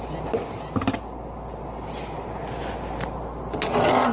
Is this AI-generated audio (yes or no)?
no